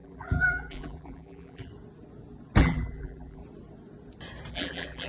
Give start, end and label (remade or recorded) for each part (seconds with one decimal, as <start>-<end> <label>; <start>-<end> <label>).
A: 0.0-1.7 remade; 1.7-2.6 recorded; 2.6-3.4 remade; 3.4-4.5 recorded; 4.5-5.1 remade